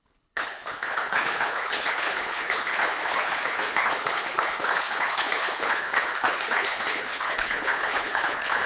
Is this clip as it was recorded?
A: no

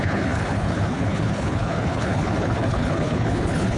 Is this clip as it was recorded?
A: no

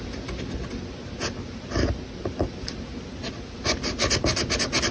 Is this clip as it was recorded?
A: yes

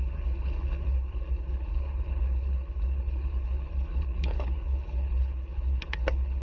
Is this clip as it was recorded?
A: no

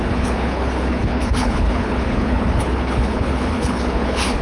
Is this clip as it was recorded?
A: no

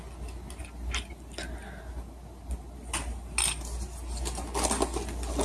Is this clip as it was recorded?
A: yes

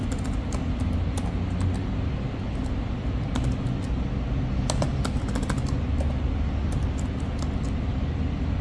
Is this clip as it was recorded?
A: yes